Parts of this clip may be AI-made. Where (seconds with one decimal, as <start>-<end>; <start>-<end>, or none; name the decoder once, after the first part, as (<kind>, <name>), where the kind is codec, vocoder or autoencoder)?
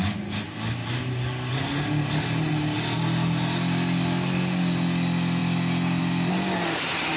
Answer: none